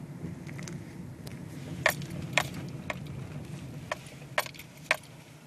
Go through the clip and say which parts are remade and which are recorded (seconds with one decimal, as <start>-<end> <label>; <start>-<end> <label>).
0.0-5.5 recorded